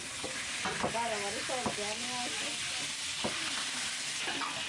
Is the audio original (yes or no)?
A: yes